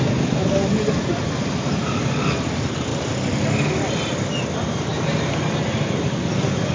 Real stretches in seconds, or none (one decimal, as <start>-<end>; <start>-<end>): 0.0-6.7